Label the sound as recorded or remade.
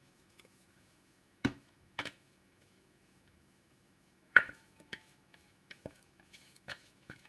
remade